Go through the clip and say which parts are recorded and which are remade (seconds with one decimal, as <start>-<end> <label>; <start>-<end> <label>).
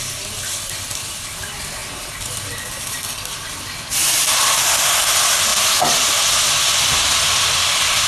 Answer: 0.0-8.1 recorded